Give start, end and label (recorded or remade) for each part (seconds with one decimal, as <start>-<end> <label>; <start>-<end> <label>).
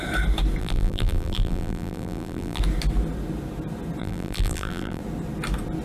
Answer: 0.0-0.6 recorded; 0.6-2.6 remade; 2.6-4.0 recorded; 4.0-5.0 remade; 5.0-5.8 recorded